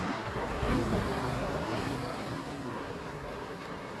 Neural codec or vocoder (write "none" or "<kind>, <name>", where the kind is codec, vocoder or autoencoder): codec, SNAC